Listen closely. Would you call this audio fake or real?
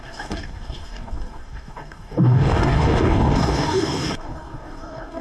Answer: fake